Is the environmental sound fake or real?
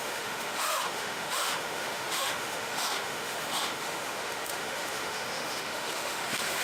fake